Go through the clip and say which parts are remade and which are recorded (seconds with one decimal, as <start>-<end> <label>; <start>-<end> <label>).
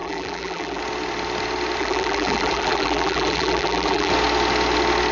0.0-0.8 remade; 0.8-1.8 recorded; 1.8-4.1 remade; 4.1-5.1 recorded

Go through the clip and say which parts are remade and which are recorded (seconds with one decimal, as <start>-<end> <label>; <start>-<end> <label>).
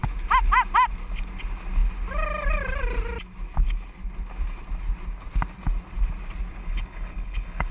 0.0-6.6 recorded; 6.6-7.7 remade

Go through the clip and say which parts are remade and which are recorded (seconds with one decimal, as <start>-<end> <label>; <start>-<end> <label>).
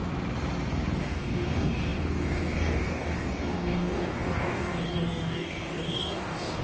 0.0-1.0 recorded; 1.0-6.6 remade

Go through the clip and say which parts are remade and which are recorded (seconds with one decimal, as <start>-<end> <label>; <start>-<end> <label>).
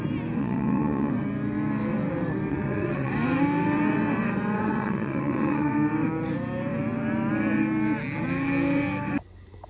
0.0-0.4 recorded; 0.4-1.1 remade; 1.1-2.5 recorded; 2.5-3.1 remade; 3.1-4.6 recorded; 4.6-5.7 remade; 5.7-9.7 recorded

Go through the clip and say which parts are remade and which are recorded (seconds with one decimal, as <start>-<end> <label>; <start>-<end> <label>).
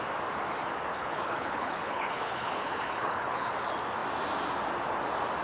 0.0-0.9 recorded; 0.9-3.5 remade; 3.5-5.4 recorded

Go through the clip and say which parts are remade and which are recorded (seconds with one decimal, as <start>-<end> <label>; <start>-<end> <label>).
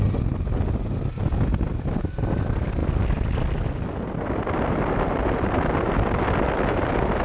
0.0-7.2 recorded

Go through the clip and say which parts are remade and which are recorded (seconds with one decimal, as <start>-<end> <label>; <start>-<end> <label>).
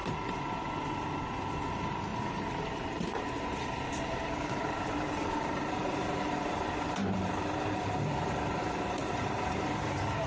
0.0-1.7 recorded; 1.7-10.3 remade